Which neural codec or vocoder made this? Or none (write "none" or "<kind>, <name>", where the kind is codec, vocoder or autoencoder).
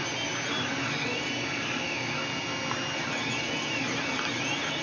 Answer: none